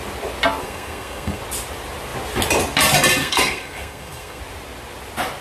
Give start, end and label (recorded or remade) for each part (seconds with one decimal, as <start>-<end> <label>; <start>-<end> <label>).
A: 0.0-0.6 recorded; 0.6-1.4 remade; 1.4-3.2 recorded; 3.2-4.4 remade; 4.4-5.4 recorded

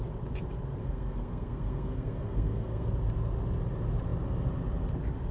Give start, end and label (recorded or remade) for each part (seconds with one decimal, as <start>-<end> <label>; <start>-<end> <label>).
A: 0.0-0.8 recorded; 0.8-2.9 remade; 2.9-5.3 recorded

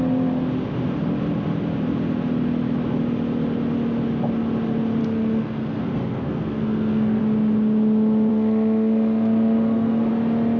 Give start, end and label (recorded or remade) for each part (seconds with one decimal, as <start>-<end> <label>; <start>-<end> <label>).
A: 0.0-5.0 recorded; 5.0-7.2 remade; 7.2-8.3 recorded; 8.3-10.1 remade; 10.1-10.6 recorded

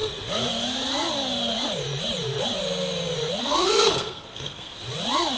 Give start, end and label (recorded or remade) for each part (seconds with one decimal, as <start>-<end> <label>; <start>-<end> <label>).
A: 0.0-3.4 recorded; 3.4-4.8 remade; 4.8-5.4 recorded

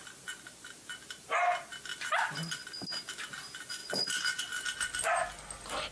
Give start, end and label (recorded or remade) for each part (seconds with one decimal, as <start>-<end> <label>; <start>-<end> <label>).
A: 0.0-5.9 recorded

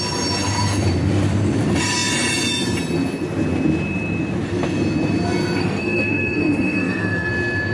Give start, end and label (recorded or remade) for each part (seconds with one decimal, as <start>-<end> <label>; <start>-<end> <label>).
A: 0.0-5.6 recorded; 5.6-7.3 remade; 7.3-7.7 recorded

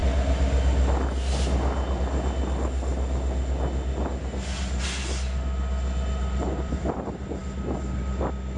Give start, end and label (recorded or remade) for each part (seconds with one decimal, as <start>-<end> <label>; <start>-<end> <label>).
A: 0.0-8.6 recorded

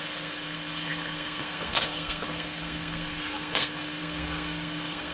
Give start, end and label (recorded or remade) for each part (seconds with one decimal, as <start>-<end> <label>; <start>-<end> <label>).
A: 0.0-5.1 remade